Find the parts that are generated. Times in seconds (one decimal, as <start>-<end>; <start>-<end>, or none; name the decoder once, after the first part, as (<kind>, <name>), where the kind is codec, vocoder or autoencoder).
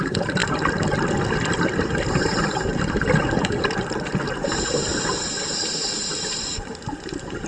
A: 0.0-0.4 (vocoder, BigVGAN v2); 1.8-4.9; 5.5-7.5